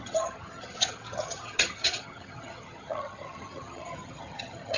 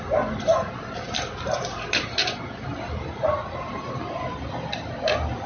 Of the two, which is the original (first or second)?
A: second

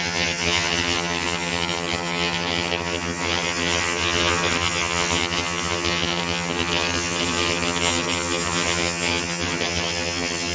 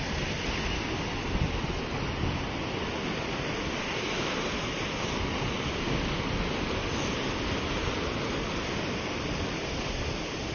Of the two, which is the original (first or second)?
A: second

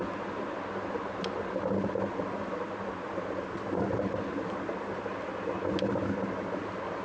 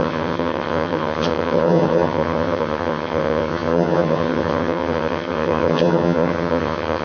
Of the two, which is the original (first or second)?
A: first